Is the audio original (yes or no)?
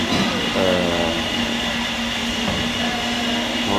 yes